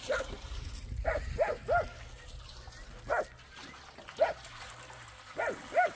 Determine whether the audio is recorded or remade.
recorded